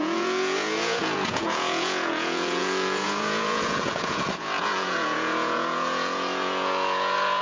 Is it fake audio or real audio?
fake